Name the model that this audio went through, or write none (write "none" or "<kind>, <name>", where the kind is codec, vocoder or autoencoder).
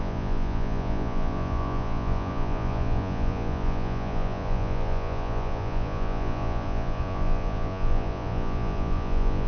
vocoder, Vocos